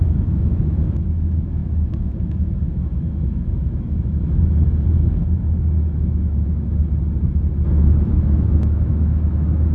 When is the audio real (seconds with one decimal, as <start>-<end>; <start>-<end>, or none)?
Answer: 6.8-7.8